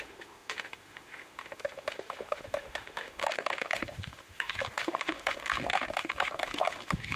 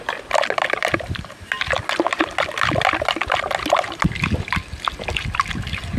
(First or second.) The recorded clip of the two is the second